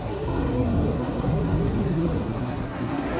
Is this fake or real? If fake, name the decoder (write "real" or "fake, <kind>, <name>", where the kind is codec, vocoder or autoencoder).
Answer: fake, codec, SNAC